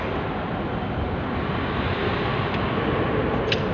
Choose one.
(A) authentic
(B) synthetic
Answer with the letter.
A